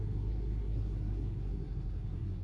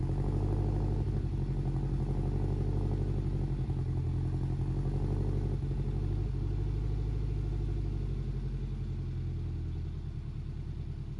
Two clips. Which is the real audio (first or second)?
second